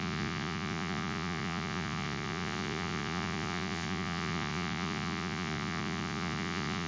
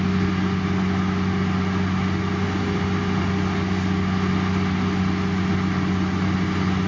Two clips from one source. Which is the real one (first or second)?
second